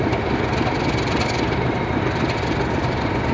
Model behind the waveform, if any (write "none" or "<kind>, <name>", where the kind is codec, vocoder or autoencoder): none